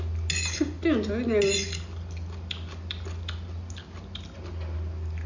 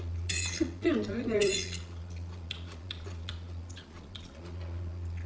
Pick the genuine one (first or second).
first